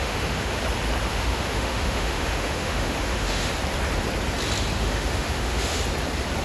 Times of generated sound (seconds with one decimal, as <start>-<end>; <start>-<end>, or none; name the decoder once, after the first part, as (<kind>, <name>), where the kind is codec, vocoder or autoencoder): 0.0-0.6 (autoencoder, DAC-VAE); 1.1-3.5; 4.8-5.8